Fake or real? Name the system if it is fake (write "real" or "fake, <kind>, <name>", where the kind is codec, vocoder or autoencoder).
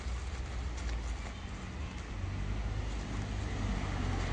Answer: real